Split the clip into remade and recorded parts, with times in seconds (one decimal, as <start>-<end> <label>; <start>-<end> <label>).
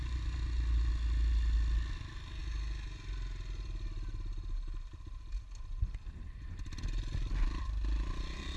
0.0-8.6 recorded